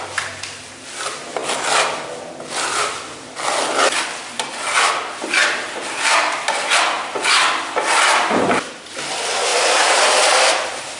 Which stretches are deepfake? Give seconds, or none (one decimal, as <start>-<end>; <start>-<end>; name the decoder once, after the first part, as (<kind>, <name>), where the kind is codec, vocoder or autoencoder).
5.4-6.8 (vocoder, BigVGAN v2); 9.5-11.0